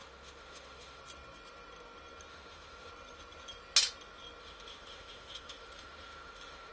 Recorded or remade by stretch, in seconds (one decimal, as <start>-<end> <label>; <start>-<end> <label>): 0.0-1.0 remade; 1.0-2.3 recorded; 2.3-2.9 remade; 2.9-4.4 recorded; 4.4-6.7 remade